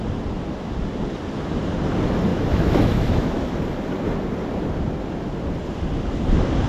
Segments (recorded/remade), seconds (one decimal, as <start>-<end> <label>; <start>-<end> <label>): 0.0-2.3 recorded; 2.3-3.6 remade; 3.6-6.7 recorded